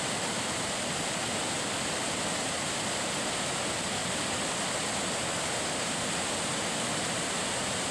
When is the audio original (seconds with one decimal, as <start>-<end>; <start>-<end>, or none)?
0.0-7.9